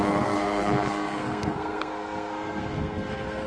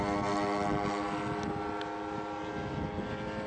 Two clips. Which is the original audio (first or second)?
second